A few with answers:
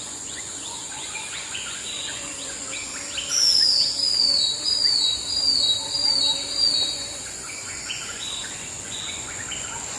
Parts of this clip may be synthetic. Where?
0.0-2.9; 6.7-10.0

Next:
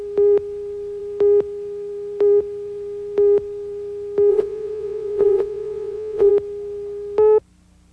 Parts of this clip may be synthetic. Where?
4.3-6.3

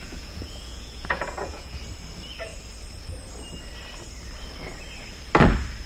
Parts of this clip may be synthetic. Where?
0.0-1.8

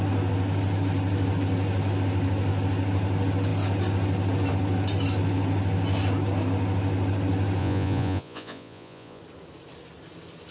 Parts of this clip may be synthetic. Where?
7.6-9.2

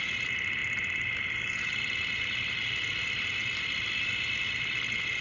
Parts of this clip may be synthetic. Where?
none

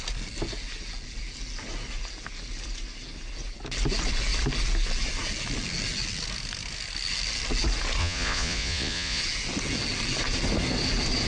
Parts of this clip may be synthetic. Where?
8.0-9.2